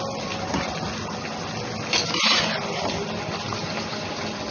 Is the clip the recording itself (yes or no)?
yes